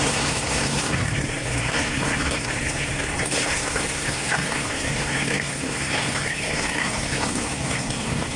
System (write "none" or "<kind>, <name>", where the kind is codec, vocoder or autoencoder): codec, SNAC